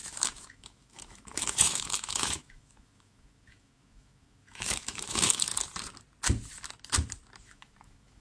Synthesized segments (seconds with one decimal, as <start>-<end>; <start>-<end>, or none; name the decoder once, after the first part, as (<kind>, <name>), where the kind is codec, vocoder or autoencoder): 0.0-5.5 (autoencoder, DAC-VAE); 7.4-8.2